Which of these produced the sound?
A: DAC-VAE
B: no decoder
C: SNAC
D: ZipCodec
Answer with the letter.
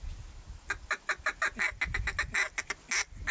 B